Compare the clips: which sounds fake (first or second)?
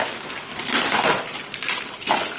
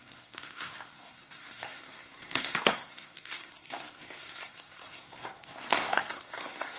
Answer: second